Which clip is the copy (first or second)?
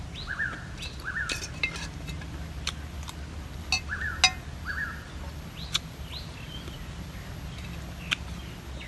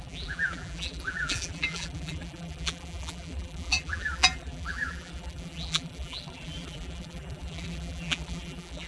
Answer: second